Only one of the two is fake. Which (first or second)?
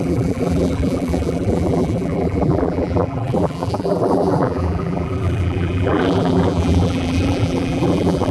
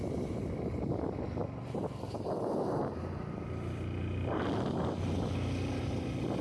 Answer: first